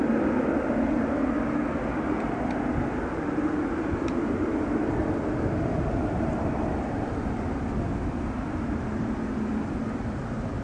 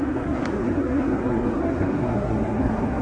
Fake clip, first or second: second